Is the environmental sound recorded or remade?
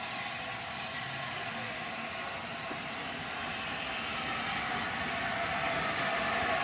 recorded